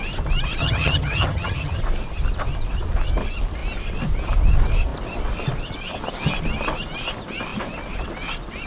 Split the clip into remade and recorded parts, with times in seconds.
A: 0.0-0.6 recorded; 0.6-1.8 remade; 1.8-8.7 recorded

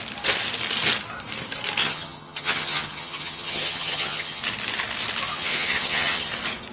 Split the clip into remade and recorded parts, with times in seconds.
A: 0.0-1.8 recorded; 1.8-4.4 remade; 4.4-5.3 recorded; 5.3-6.3 remade; 6.3-6.7 recorded

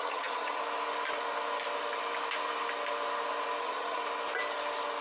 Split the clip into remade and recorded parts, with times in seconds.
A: 0.0-0.6 remade; 0.6-3.6 recorded; 3.6-4.0 remade; 4.0-5.0 recorded